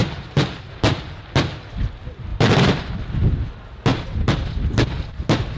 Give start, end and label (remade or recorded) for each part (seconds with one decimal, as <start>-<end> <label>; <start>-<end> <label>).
0.0-0.8 remade; 0.8-2.3 recorded; 2.3-2.9 remade; 2.9-3.9 recorded; 3.9-4.5 remade; 4.5-5.6 recorded